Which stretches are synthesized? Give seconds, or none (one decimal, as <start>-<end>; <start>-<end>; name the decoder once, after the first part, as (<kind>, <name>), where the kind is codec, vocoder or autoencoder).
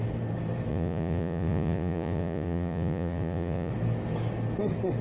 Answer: 0.7-3.7 (vocoder, Vocos)